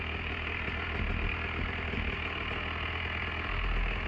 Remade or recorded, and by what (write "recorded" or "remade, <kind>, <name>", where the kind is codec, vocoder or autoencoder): recorded